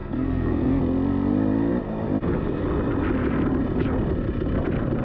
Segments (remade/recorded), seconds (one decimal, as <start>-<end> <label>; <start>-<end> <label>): 0.0-0.8 remade; 0.8-5.0 recorded